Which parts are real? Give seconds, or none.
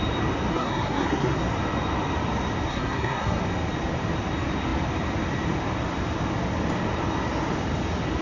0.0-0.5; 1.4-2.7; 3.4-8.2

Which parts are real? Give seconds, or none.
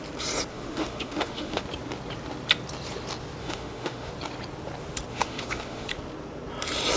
0.0-0.5; 1.6-3.4; 4.1-5.1; 5.9-7.0